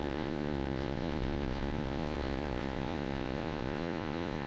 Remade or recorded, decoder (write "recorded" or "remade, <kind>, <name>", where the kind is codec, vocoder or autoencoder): remade, vocoder, Vocos